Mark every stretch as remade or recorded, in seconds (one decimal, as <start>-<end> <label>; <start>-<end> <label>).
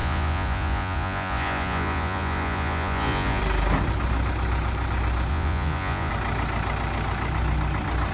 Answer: 0.0-3.4 remade; 3.4-5.3 recorded; 5.3-6.1 remade; 6.1-8.1 recorded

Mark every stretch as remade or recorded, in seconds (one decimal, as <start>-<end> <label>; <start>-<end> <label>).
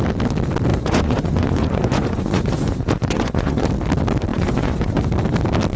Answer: 0.0-0.7 recorded; 0.7-3.7 remade; 3.7-4.3 recorded; 4.3-5.0 remade; 5.0-5.8 recorded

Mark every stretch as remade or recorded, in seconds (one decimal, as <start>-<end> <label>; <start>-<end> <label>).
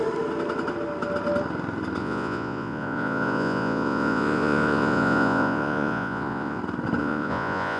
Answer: 0.0-2.0 recorded; 2.0-6.6 remade; 6.6-7.0 recorded; 7.0-7.8 remade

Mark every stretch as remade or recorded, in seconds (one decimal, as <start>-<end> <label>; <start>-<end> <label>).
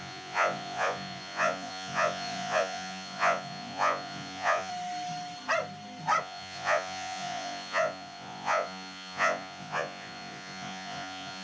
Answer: 0.0-4.7 remade; 4.7-6.2 recorded; 6.2-11.4 remade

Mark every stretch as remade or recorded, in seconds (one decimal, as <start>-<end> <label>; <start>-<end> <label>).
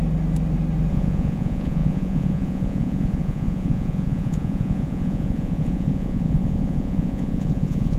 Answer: 0.0-0.9 recorded; 0.9-8.0 remade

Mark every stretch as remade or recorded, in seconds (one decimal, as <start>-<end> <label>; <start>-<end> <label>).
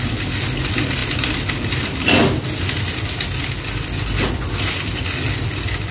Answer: 0.0-5.9 recorded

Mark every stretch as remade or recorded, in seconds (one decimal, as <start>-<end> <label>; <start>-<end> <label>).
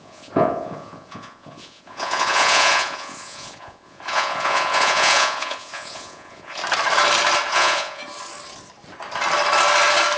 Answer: 0.0-6.6 remade; 6.6-7.5 recorded; 7.5-8.0 remade; 8.0-10.2 recorded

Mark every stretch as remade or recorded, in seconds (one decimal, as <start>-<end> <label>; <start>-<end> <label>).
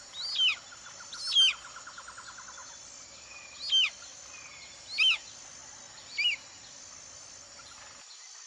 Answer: 0.0-8.5 recorded